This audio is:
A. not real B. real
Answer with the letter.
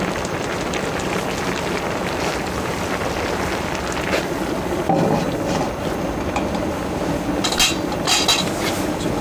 B